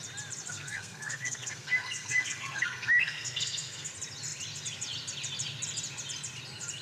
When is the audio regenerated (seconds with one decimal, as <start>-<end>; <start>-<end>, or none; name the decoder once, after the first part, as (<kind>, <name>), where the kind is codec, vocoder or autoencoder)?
0.5-3.9 (codec, SNAC)